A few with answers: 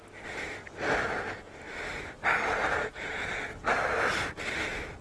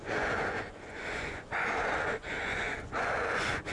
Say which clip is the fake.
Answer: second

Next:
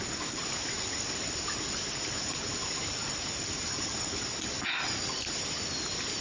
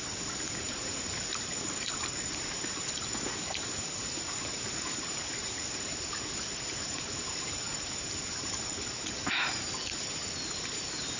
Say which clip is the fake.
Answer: second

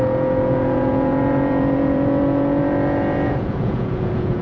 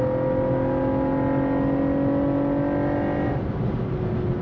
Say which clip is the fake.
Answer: first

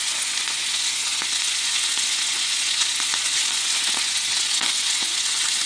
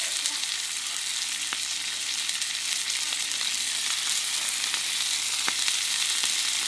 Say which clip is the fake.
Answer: first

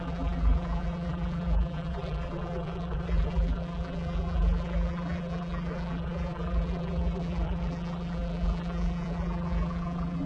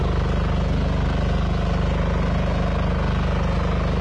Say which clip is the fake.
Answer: first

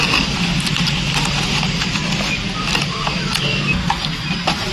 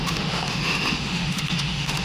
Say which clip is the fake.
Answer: second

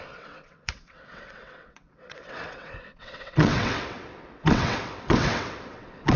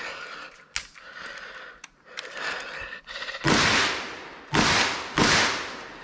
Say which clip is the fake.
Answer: first